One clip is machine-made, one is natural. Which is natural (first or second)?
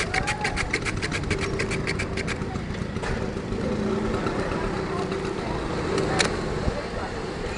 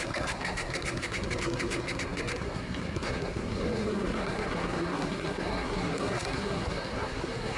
first